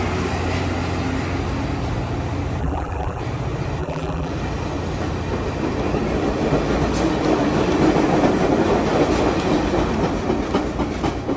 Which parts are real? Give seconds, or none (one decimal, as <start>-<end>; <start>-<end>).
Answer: 0.0-2.6; 3.2-3.8; 4.3-11.4